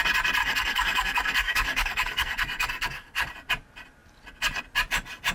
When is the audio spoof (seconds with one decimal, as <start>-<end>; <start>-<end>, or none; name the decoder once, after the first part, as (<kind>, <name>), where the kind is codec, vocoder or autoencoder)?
0.4-3.3 (codec, SNAC)